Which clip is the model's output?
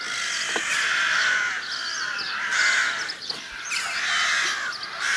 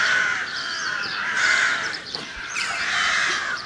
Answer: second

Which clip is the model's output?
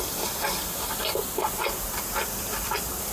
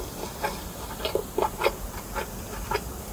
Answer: second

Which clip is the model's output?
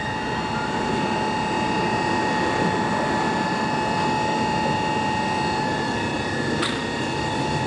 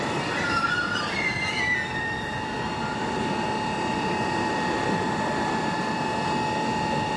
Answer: second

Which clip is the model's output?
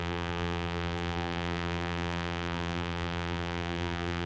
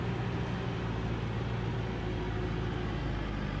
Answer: first